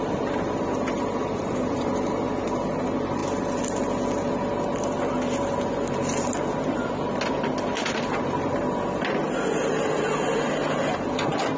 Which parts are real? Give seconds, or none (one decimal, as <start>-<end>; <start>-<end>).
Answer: 0.0-11.6